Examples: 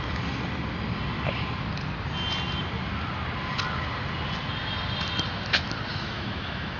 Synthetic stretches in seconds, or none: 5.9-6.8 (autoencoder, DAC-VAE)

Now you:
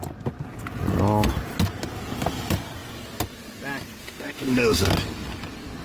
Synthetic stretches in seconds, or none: 4.0-4.9 (autoencoder, DAC-VAE)

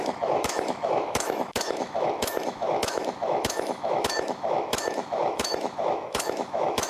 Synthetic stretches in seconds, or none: 0.0-6.9 (autoencoder, DAC-VAE)

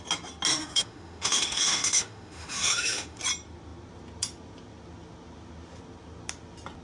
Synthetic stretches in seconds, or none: 0.5-3.2 (autoencoder, DAC-VAE)

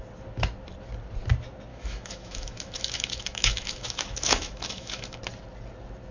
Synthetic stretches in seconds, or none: 1.7-5.2 (autoencoder, DAC-VAE)

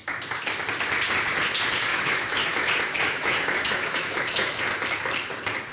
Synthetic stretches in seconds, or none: 1.9-4.6 (autoencoder, DAC-VAE)